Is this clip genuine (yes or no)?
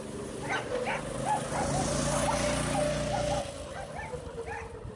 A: yes